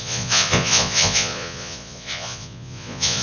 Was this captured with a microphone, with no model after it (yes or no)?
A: no